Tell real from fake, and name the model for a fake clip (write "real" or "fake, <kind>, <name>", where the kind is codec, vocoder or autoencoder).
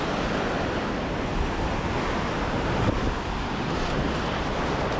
real